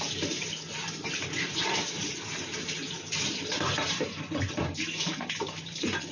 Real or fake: fake